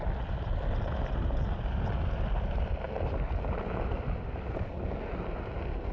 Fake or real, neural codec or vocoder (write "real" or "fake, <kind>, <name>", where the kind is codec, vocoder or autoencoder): real